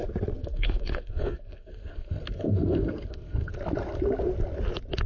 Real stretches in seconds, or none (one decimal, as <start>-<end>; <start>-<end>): 0.0-0.4; 3.5-5.1